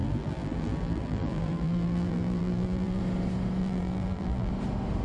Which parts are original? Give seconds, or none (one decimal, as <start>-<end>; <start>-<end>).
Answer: 3.0-3.6; 4.5-5.0